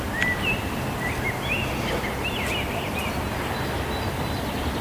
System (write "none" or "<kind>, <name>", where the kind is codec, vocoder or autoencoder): none